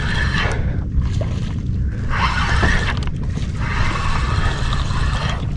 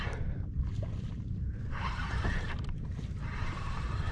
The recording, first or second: first